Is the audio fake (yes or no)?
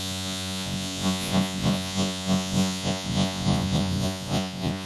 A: yes